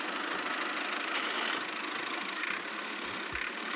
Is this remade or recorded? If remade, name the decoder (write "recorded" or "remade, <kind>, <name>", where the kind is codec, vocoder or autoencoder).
recorded